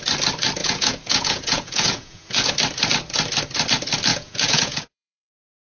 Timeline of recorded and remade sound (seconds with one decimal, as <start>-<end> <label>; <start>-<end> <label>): 0.0-0.6 recorded; 0.6-2.5 remade; 2.5-4.1 recorded; 4.1-5.3 remade; 5.3-5.7 recorded